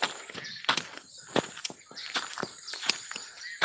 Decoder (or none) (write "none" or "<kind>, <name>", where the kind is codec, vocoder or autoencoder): none